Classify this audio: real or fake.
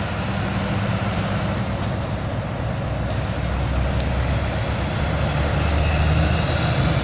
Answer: real